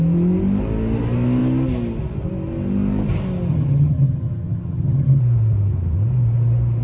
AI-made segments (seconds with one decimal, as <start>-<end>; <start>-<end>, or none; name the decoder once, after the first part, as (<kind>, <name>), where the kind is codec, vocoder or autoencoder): 3.5-5.2 (vocoder, HiFi-GAN)